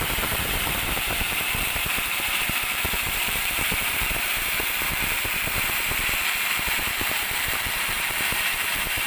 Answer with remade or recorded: remade